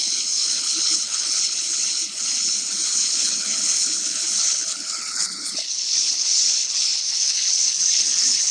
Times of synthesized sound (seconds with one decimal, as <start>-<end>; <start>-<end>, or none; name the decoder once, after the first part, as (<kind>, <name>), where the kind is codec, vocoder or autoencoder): 0.0-8.5 (codec, HILCodec)